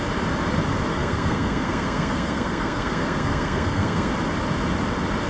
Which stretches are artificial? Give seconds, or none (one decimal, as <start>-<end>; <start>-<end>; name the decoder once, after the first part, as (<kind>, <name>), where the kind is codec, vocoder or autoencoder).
0.9-4.1 (codec, SNAC)

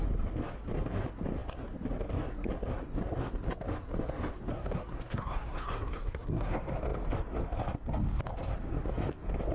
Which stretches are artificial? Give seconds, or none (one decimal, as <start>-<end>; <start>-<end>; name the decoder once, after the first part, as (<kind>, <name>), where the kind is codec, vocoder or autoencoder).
4.5-6.5 (codec, SNAC)

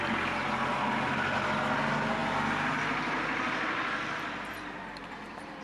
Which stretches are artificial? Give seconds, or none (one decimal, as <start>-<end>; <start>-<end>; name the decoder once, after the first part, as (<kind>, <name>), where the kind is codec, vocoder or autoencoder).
none